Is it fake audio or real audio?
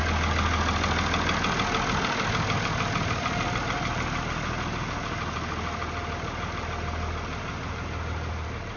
real